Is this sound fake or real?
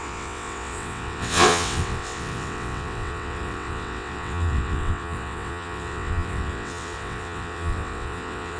fake